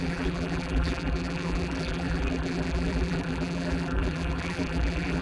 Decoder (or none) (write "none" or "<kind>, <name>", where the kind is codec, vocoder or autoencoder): vocoder, BigVGAN v2